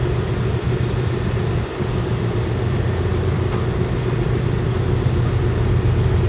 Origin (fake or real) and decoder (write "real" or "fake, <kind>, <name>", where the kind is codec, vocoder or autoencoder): real